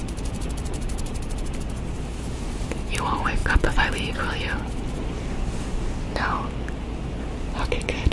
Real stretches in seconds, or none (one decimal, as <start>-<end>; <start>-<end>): 2.7-8.1